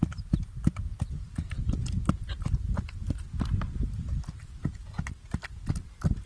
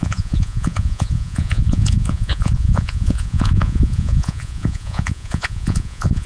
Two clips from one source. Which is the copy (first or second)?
second